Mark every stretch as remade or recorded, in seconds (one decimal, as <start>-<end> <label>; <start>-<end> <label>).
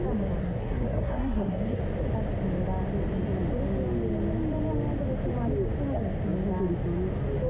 0.0-0.4 recorded; 0.4-1.8 remade; 1.8-7.5 recorded